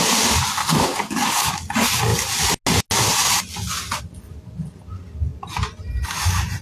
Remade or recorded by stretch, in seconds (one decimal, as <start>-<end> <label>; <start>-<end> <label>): 0.0-0.6 recorded; 0.6-1.5 remade; 1.5-6.6 recorded